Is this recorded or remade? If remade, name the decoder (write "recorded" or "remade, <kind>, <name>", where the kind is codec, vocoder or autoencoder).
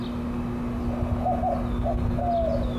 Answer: recorded